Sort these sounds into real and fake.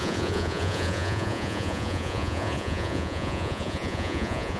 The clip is fake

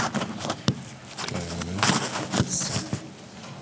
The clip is real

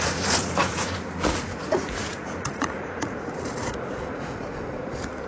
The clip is fake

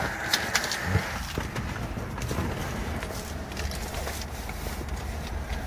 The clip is real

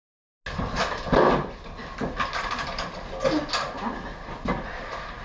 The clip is real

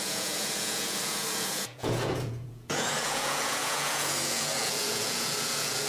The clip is fake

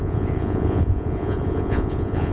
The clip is fake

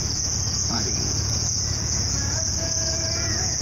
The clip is fake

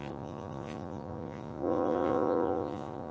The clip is fake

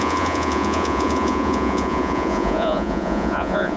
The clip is fake